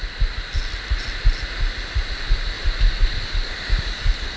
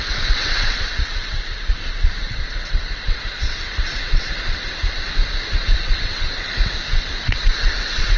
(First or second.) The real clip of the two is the first